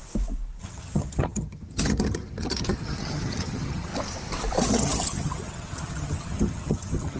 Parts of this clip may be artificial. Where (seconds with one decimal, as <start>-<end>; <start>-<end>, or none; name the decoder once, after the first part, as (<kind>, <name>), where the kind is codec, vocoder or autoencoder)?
0.6-3.9 (vocoder, HiFi-GAN); 4.7-7.2